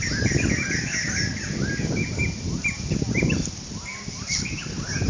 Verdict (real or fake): real